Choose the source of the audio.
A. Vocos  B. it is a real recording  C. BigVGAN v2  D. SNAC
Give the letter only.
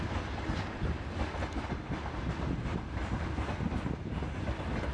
B